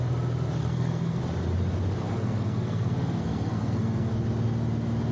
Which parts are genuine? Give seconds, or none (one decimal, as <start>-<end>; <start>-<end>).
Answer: 0.0-0.6; 1.2-2.0; 4.1-5.1